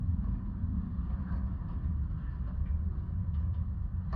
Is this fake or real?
real